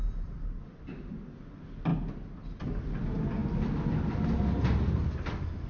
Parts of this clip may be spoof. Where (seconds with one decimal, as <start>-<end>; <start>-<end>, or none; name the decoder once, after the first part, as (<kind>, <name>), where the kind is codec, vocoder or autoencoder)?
none